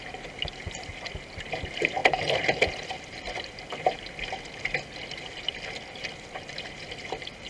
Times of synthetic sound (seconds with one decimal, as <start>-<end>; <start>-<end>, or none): none